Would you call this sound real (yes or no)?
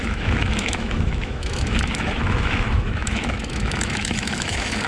no